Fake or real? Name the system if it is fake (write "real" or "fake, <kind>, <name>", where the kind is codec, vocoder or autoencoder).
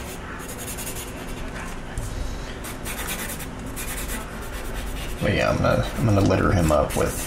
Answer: real